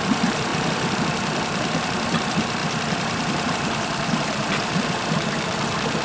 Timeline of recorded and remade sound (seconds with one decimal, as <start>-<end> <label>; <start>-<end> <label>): 0.0-6.0 remade